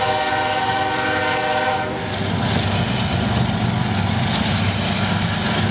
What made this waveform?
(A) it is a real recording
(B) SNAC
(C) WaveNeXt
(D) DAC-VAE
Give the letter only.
A